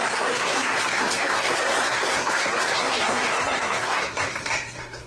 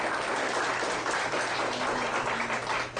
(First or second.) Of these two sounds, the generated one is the first